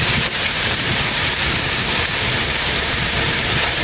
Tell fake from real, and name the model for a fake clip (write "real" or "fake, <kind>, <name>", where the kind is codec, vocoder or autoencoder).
fake, vocoder, BigVGAN v2